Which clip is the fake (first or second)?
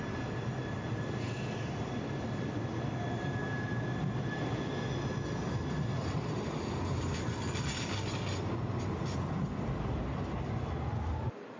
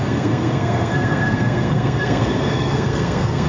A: second